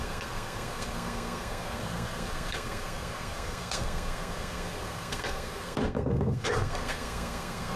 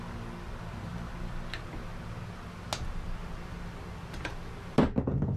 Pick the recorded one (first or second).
second